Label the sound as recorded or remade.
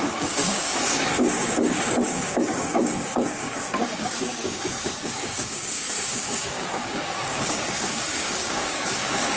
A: remade